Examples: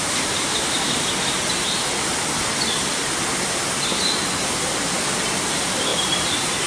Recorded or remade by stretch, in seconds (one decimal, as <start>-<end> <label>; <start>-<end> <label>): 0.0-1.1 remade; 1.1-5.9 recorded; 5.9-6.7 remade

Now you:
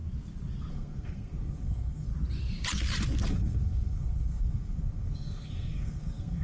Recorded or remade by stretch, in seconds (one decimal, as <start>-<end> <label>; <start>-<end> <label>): 0.0-0.7 recorded; 0.7-2.1 remade; 2.1-3.3 recorded; 3.3-6.4 remade

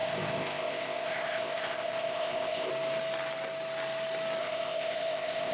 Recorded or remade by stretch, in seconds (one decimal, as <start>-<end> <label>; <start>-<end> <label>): 0.0-2.7 remade; 2.7-4.4 recorded; 4.4-5.5 remade

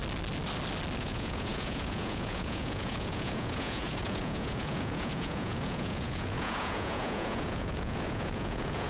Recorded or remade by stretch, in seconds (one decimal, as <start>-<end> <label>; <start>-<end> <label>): 0.0-1.0 recorded; 1.0-8.9 remade